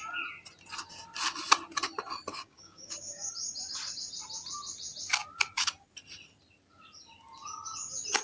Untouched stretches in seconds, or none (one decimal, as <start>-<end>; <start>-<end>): 0.0-2.3; 3.3-8.2